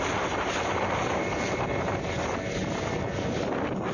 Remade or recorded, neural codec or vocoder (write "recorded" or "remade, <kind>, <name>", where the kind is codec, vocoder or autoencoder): recorded